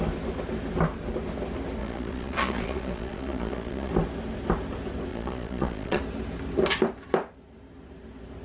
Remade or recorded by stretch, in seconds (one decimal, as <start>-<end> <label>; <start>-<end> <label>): 0.0-1.8 recorded; 1.8-3.9 remade; 3.9-5.1 recorded; 5.1-6.0 remade; 6.0-8.4 recorded